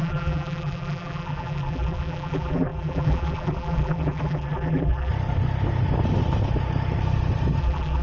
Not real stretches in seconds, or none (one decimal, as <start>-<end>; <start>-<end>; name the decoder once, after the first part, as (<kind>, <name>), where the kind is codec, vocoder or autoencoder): 0.0-5.1 (vocoder, BigVGAN v2); 7.6-8.0